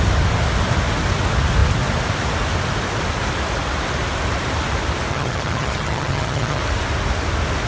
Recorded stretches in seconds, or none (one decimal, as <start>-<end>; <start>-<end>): 0.0-5.1; 6.6-7.7